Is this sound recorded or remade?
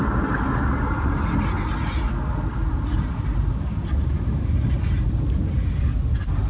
recorded